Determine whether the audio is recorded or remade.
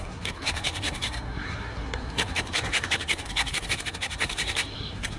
remade